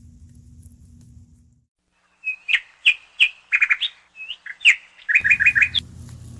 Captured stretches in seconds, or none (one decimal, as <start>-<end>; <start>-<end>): 0.0-6.4